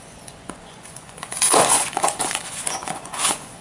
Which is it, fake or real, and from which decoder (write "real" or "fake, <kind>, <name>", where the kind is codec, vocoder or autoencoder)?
fake, vocoder, Vocos